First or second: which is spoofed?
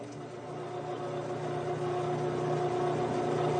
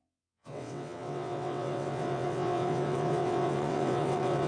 second